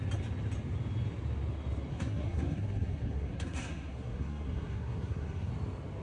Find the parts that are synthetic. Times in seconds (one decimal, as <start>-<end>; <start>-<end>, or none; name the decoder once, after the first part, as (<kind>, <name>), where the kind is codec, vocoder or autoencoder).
1.9-5.5 (codec, SNAC)